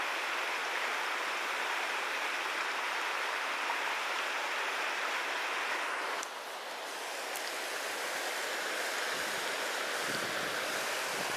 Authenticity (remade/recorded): recorded